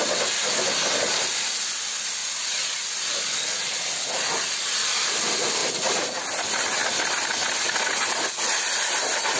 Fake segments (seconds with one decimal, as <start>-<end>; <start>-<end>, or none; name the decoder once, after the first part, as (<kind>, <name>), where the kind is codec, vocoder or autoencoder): 2.2-2.8 (vocoder, Vocos)